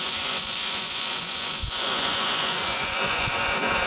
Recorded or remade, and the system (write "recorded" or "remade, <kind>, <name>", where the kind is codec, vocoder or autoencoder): remade, vocoder, Vocos